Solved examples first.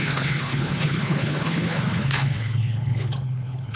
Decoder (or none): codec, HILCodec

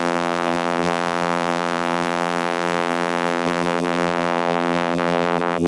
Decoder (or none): vocoder, BigVGAN v2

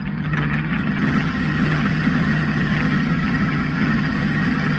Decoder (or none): vocoder, HiFi-GAN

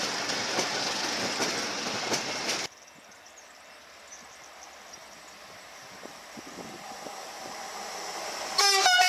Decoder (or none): none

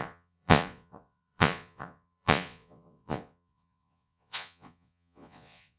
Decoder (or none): vocoder, Vocos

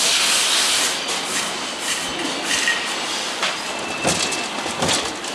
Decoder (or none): none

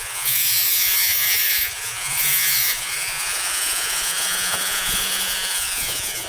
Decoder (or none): vocoder, Vocos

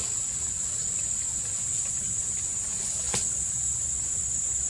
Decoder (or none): none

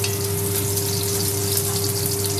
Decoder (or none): none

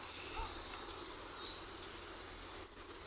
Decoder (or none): none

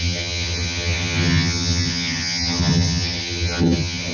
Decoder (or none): vocoder, HiFi-GAN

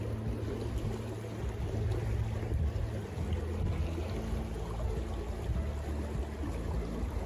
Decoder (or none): none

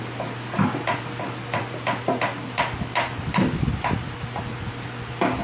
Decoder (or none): none